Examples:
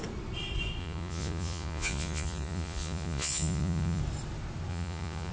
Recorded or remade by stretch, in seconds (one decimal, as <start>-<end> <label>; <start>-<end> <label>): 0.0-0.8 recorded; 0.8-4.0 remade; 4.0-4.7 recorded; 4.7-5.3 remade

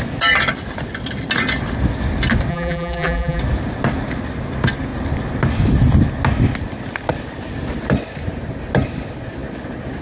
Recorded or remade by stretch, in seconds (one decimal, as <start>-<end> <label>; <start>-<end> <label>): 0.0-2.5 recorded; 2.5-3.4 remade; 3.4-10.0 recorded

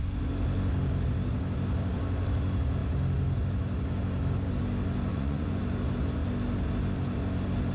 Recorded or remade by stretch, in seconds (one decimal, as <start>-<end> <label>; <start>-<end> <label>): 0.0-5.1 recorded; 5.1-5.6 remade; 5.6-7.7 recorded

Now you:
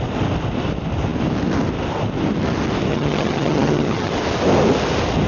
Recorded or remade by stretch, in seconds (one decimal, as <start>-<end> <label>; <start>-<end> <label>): 0.0-2.9 recorded; 2.9-4.1 remade; 4.1-5.3 recorded